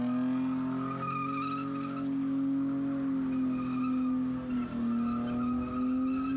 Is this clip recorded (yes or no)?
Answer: yes